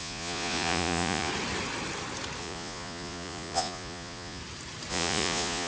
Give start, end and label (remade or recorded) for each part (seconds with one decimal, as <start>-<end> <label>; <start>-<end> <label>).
0.0-1.3 remade; 1.3-2.4 recorded; 2.4-4.4 remade; 4.4-4.9 recorded; 4.9-5.7 remade